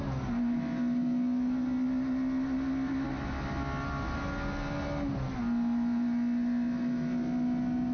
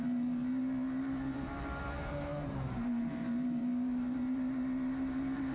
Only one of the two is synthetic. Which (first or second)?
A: second